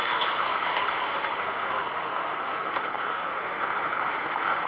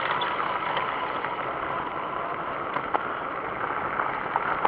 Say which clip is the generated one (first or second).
first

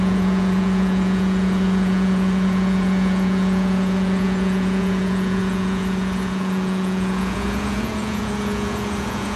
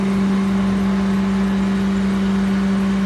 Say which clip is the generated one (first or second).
first